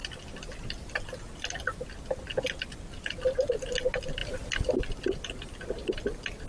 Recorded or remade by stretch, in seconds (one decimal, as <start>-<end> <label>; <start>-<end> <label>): 0.0-6.5 recorded